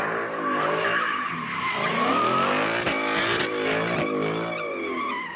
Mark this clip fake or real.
real